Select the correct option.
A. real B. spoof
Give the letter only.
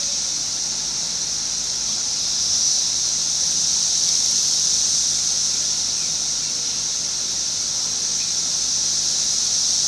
A